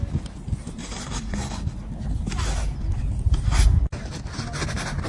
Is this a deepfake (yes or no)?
no